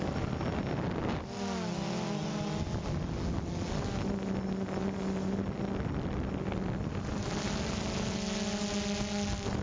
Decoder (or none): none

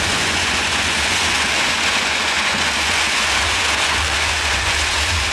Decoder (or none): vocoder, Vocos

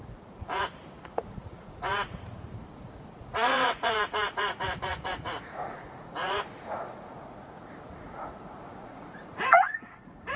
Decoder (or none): vocoder, Vocos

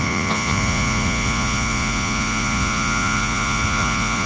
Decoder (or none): vocoder, Vocos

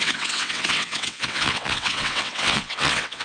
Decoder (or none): vocoder, WaveNeXt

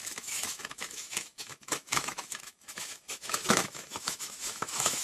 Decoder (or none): autoencoder, DAC-VAE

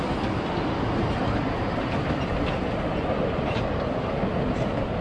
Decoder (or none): none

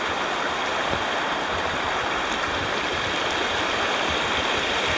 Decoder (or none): none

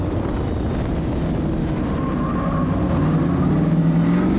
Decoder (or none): none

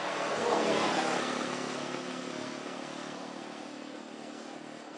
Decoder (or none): codec, SNAC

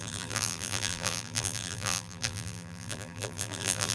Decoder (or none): vocoder, BigVGAN v2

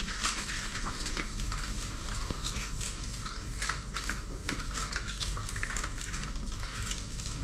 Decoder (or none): codec, DAC